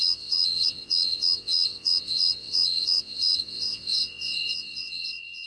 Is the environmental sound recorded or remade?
remade